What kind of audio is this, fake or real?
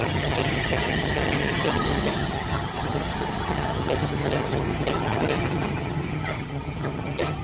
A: fake